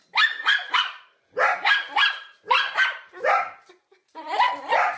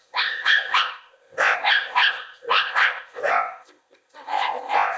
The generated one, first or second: second